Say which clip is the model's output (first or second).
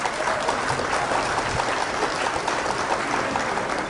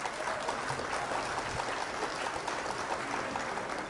first